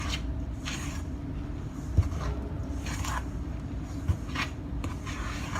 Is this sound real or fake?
real